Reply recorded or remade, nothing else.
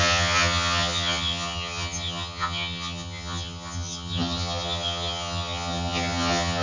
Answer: remade